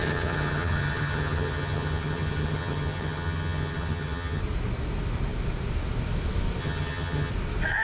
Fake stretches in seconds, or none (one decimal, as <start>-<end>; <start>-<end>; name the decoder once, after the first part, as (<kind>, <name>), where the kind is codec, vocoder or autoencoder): 0.0-4.4 (vocoder, HiFi-GAN); 6.6-7.3